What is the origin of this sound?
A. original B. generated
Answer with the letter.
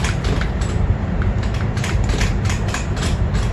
B